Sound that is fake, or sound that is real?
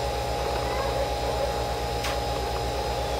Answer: real